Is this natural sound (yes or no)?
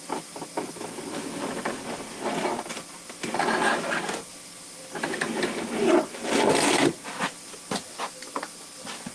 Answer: yes